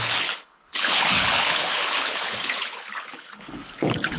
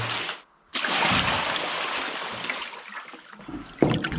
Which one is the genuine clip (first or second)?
second